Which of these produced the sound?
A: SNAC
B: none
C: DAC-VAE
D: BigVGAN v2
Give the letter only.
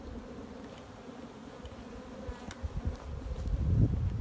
B